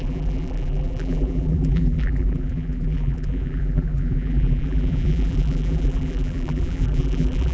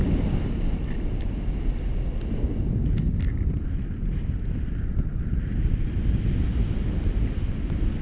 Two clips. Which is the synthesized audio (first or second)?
first